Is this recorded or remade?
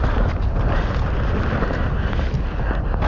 recorded